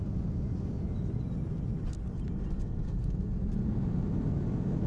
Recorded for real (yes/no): yes